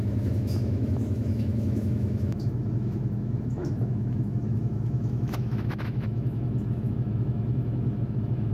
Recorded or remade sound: remade